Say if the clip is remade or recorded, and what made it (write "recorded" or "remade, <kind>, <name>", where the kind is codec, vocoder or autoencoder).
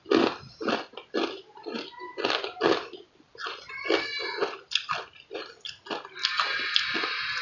recorded